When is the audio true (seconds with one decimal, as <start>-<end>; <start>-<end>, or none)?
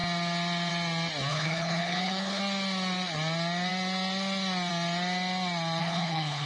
0.0-1.3; 2.4-5.8